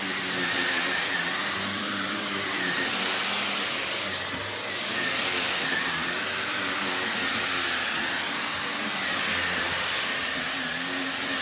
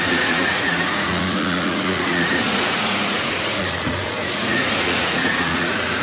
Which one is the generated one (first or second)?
second